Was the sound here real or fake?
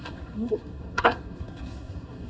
fake